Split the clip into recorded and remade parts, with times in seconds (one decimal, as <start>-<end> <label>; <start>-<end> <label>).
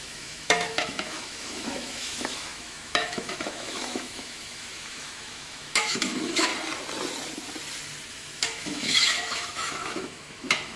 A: 0.0-6.5 remade; 6.5-8.1 recorded; 8.1-10.8 remade